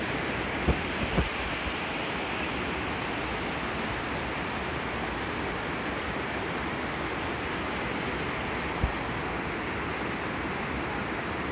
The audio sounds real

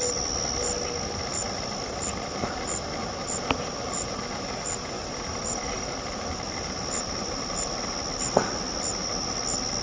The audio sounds real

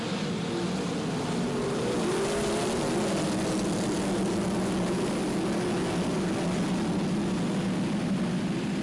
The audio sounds real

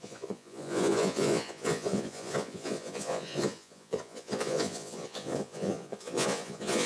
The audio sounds fake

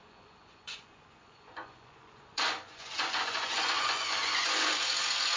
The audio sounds fake